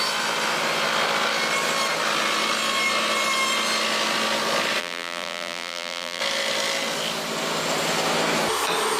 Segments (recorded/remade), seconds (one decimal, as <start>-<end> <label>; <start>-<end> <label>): 0.0-4.8 recorded; 4.8-6.2 remade; 6.2-9.0 recorded

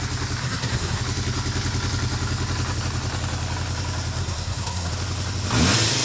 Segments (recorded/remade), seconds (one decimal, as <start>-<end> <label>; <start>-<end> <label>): 0.0-0.4 recorded; 0.4-1.0 remade; 1.0-4.2 recorded; 4.2-4.9 remade; 4.9-6.0 recorded